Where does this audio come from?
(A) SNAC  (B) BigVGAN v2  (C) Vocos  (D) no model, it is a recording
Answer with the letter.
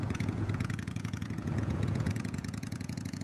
C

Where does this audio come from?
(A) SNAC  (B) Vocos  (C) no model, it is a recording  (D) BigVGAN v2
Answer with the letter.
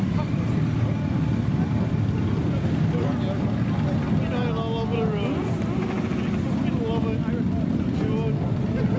C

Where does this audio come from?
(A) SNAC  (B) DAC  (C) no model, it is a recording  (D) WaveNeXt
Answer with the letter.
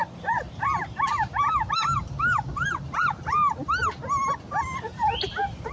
C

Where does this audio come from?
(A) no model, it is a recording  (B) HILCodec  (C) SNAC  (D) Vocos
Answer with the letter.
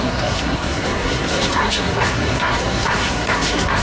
C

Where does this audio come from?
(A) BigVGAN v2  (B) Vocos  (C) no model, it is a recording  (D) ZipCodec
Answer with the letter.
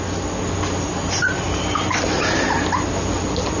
C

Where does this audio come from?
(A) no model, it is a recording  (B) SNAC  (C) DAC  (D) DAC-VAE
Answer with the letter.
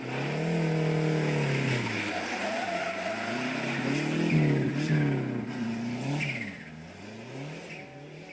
A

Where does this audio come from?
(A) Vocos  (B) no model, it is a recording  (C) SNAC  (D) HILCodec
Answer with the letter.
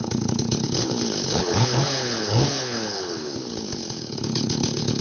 D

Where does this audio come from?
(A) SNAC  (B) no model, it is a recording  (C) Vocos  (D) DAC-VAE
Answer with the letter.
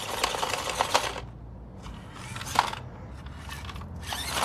B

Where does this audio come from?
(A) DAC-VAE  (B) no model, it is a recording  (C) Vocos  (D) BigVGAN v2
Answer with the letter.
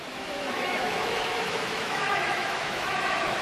A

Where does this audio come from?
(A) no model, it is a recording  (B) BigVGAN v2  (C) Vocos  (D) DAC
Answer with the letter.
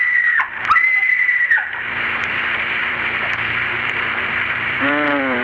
B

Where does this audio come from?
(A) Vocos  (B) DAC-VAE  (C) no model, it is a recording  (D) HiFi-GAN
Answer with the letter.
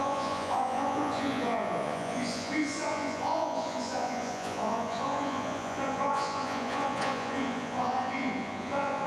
A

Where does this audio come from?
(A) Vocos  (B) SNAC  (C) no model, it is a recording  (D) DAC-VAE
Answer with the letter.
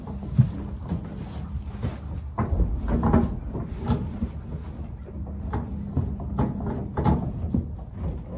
C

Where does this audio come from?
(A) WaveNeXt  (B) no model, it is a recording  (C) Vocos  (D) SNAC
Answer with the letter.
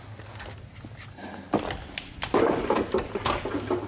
B